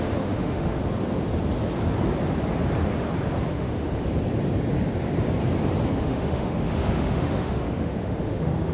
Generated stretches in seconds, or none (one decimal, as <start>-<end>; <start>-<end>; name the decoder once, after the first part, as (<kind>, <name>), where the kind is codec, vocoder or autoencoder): 0.0-0.8 (autoencoder, DAC-VAE); 3.5-4.1; 6.0-8.7